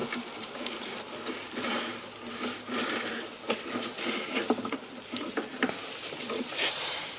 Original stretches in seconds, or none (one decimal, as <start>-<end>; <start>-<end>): 0.0-7.2